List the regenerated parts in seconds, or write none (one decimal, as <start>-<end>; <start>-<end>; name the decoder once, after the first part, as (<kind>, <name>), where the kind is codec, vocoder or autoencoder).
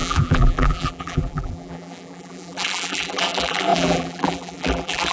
0.0-5.1 (vocoder, BigVGAN v2)